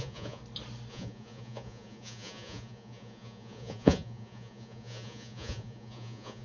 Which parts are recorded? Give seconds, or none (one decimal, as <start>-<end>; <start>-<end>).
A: 0.4-0.9